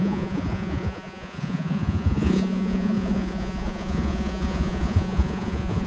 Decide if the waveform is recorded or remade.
remade